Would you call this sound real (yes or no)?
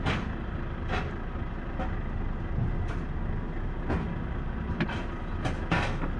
yes